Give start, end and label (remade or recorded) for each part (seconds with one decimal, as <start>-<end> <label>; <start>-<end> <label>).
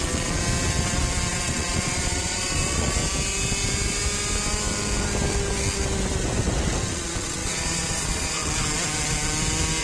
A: 0.0-0.4 remade; 0.4-1.3 recorded; 1.3-3.0 remade; 3.0-6.9 recorded; 6.9-8.4 remade; 8.4-9.8 recorded